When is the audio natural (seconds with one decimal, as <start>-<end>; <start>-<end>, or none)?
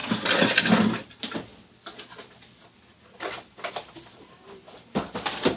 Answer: 0.0-0.6; 1.5-3.7